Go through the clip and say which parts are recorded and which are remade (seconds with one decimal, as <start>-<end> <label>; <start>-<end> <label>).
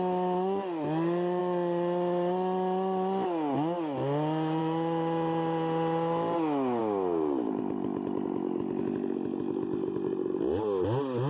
0.0-11.3 recorded